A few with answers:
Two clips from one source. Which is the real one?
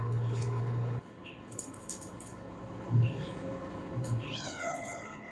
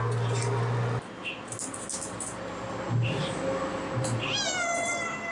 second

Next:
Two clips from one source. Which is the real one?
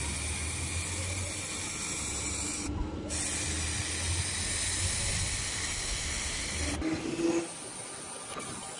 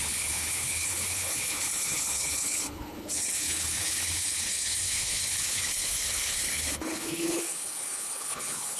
first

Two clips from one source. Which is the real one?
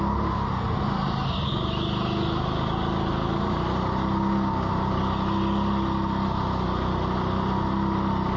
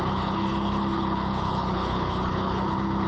first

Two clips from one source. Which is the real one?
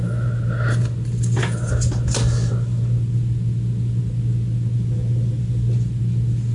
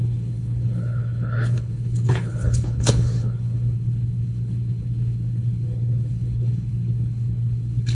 first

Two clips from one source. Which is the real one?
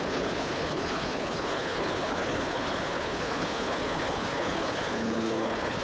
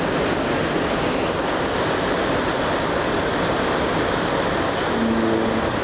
second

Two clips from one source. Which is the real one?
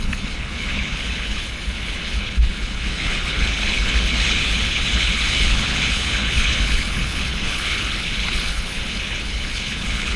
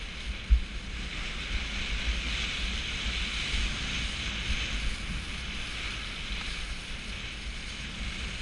second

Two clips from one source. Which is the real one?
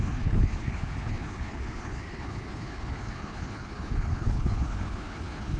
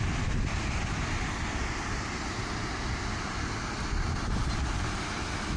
second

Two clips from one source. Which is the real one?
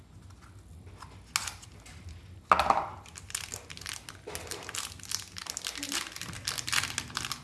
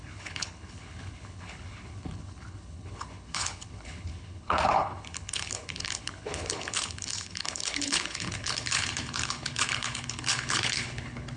first